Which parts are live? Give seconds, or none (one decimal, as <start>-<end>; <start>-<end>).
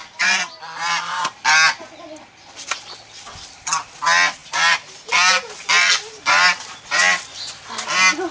0.0-8.3